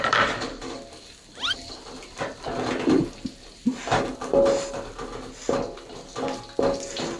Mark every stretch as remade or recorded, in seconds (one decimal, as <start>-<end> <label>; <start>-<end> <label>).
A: 0.0-7.2 recorded